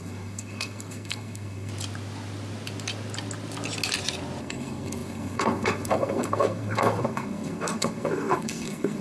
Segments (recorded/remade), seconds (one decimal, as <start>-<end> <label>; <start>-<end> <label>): 0.0-1.7 remade; 1.7-4.4 recorded; 4.4-9.0 remade